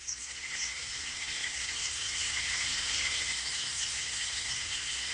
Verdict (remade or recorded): remade